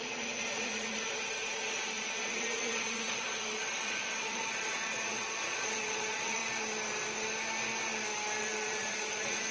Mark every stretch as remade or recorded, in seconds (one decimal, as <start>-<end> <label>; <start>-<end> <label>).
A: 0.0-6.4 remade; 6.4-8.4 recorded; 8.4-9.5 remade